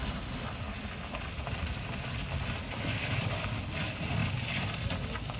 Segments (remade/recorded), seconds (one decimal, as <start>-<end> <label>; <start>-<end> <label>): 0.0-3.2 recorded; 3.2-4.2 remade; 4.2-5.4 recorded